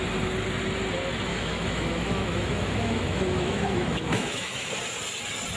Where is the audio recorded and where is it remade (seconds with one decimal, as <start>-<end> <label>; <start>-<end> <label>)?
0.0-1.3 recorded; 1.3-4.7 remade; 4.7-5.6 recorded